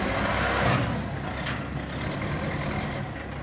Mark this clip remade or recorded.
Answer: recorded